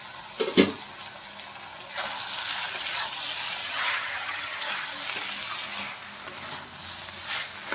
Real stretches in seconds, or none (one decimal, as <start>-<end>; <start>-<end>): 0.0-3.6; 4.7-7.7

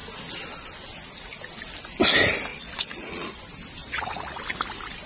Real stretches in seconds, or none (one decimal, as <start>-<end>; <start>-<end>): 0.0-2.5; 3.4-3.8; 4.4-5.1

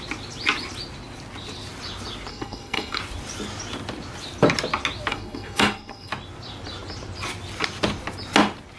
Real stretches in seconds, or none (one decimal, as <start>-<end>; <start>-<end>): 0.0-2.3; 3.0-5.1; 6.1-8.8

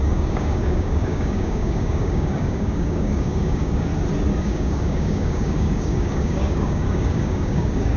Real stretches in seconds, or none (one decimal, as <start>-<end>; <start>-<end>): 3.9-4.4

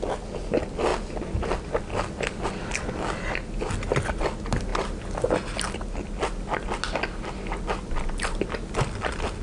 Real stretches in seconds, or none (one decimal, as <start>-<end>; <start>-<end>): 0.0-9.4

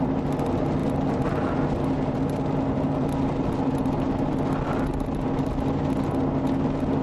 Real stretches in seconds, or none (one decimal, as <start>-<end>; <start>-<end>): 0.0-7.0

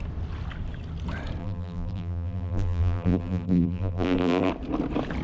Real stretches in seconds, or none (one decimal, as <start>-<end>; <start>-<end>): 0.0-1.4; 4.5-5.2

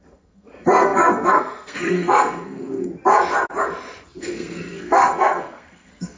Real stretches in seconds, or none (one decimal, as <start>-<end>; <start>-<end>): 2.9-4.2